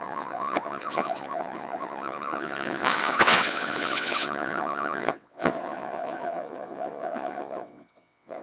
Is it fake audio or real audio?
fake